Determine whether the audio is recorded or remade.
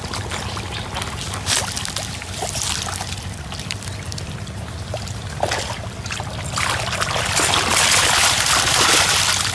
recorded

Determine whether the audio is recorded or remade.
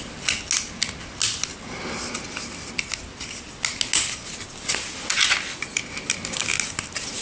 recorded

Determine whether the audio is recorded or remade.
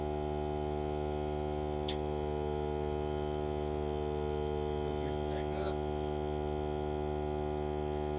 recorded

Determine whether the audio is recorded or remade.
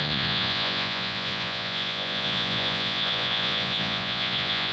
remade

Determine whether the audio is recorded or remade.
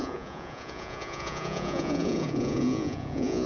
remade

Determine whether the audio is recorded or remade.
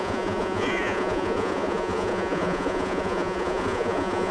remade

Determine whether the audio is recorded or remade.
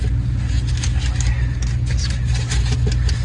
recorded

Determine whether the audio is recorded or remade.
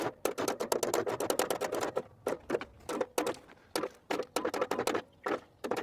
recorded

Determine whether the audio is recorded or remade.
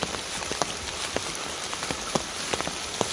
recorded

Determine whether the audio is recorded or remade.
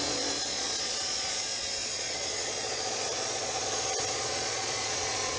remade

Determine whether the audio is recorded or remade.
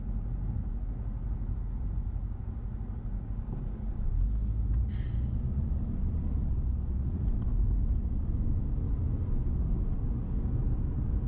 recorded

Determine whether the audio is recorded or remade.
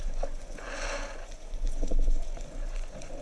remade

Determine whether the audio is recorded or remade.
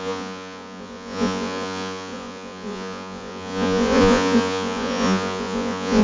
remade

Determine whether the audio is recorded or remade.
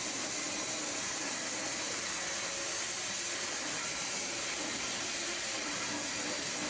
recorded